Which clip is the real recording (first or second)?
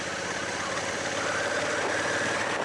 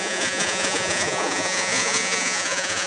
first